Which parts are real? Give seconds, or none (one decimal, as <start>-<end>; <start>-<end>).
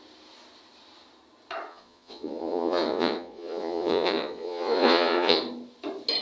0.0-1.7; 5.4-6.2